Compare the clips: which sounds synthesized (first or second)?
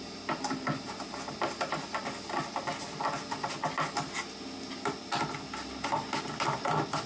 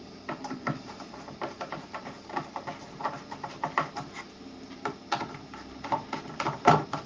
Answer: second